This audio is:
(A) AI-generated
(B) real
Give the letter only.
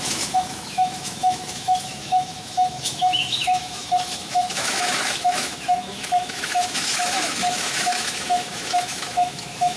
A